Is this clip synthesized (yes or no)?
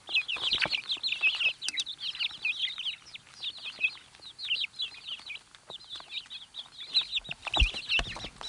no